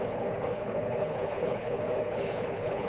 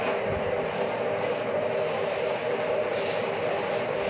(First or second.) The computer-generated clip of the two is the first